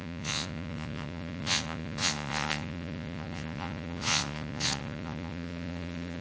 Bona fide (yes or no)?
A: no